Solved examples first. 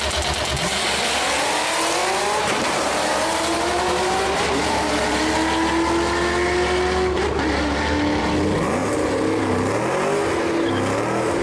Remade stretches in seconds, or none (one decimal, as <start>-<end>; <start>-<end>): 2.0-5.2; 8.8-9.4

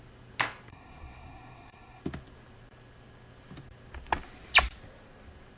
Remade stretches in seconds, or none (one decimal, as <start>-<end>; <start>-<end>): 0.7-2.0

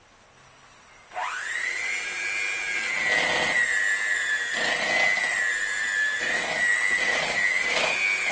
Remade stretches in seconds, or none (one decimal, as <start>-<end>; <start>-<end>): none

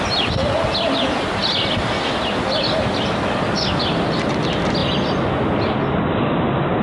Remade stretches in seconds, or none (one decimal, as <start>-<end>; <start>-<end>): none

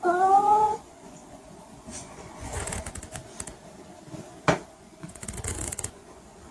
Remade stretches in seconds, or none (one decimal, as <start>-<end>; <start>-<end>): 0.0-3.2; 4.7-6.5